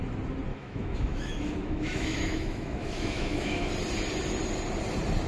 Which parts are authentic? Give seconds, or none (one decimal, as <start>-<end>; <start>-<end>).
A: 0.0-0.5; 3.7-5.3